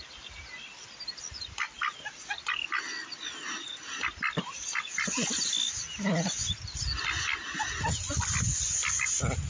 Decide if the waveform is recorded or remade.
recorded